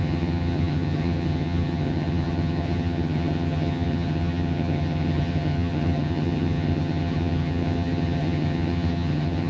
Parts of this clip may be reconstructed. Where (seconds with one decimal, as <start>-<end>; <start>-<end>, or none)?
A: 0.0-9.5